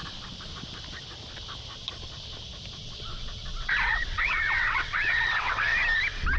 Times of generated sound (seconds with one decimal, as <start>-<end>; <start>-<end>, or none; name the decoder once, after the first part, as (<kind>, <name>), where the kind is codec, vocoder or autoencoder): 3.6-5.7 (vocoder, WaveNeXt)